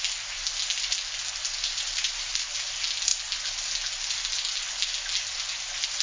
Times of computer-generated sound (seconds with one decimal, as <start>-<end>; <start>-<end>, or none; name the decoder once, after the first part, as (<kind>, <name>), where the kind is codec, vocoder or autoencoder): 1.4-2.7 (vocoder, BigVGAN v2)